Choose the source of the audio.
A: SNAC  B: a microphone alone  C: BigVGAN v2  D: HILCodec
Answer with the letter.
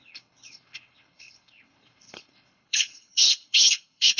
D